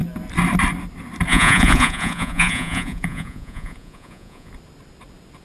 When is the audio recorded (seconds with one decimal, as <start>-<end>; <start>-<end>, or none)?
0.0-1.3; 4.5-5.4